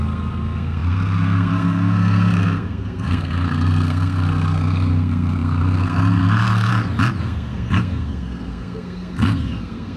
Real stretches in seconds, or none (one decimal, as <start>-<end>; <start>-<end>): 6.7-7.2